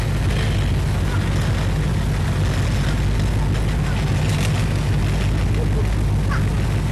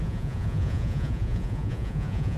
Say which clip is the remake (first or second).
second